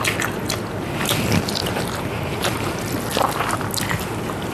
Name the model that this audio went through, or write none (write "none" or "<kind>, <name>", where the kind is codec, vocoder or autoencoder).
none